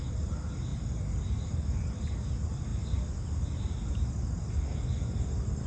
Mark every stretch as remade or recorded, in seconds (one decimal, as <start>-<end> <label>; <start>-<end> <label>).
0.0-5.7 recorded